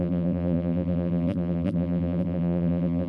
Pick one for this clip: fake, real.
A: fake